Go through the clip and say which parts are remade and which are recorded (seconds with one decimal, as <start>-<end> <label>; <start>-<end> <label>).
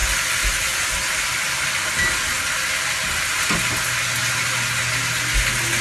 0.0-5.8 recorded